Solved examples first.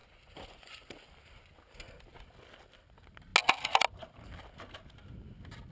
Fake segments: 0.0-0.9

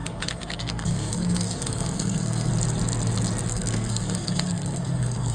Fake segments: 0.0-2.5; 3.5-5.3